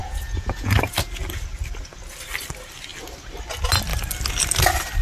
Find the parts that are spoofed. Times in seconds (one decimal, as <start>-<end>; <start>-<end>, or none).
0.0-0.7